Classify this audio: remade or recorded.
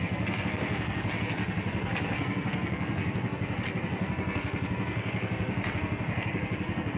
remade